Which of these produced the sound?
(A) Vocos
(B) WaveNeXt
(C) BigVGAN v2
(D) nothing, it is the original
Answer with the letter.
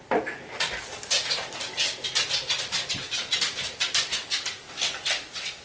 D